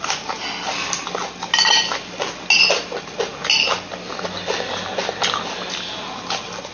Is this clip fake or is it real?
real